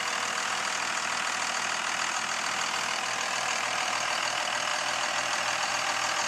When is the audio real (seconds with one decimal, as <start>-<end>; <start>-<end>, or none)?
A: 0.0-6.3